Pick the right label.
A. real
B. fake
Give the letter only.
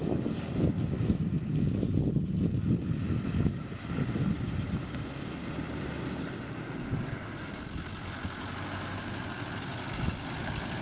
A